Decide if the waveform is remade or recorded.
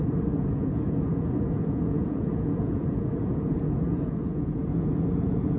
remade